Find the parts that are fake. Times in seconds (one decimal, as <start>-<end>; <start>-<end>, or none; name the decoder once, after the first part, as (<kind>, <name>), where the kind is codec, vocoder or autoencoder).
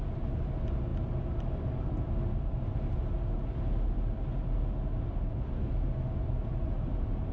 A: none